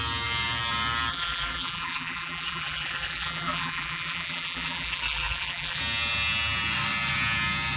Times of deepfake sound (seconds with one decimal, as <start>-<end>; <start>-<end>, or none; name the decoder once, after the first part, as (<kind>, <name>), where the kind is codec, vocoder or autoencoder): 1.1-5.8 (vocoder, BigVGAN v2)